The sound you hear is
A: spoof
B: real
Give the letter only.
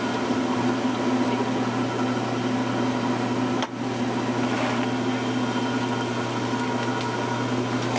B